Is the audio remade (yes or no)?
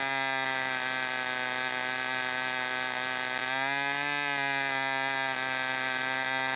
no